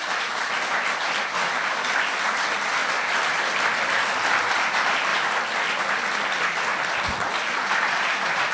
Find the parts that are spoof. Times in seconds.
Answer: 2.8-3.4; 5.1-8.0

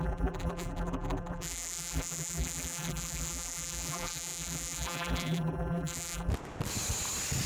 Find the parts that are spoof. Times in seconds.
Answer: 0.0-6.3

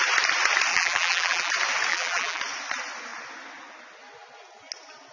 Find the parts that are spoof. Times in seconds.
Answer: 0.7-1.5; 1.9-2.4